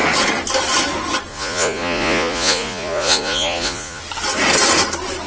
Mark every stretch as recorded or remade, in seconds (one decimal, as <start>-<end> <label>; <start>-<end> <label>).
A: 0.0-1.3 recorded; 1.3-4.0 remade; 4.0-5.3 recorded